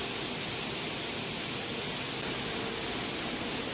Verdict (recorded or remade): recorded